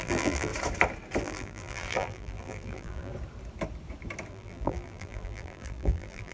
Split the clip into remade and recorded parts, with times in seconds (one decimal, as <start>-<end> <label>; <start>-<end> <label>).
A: 0.0-0.5 remade; 0.5-1.2 recorded; 1.2-3.1 remade; 3.1-4.3 recorded; 4.3-6.3 remade